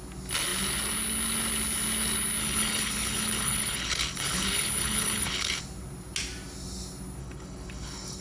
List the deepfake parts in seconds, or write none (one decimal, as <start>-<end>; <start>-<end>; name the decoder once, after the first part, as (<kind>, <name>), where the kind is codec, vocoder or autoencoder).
2.4-5.6 (codec, HILCodec); 7.2-8.2